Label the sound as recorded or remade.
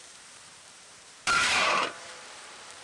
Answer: remade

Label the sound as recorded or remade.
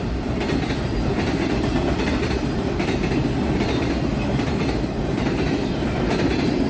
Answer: recorded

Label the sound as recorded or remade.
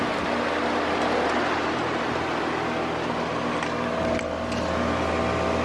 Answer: recorded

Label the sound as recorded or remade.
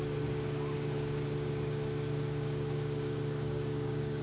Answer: remade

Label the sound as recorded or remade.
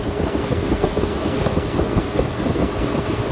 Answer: remade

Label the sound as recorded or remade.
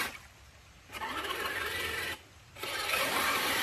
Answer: recorded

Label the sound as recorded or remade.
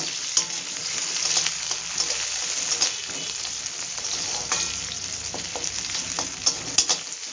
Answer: recorded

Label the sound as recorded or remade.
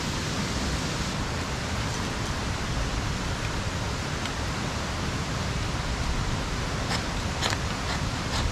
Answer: recorded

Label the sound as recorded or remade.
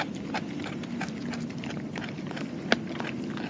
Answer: recorded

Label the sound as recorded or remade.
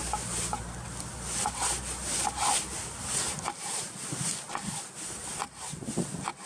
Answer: recorded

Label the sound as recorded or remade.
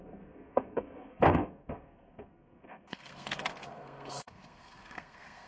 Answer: remade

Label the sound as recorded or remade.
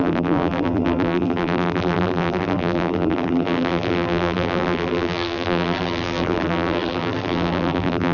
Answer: remade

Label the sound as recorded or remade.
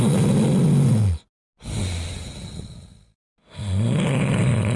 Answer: recorded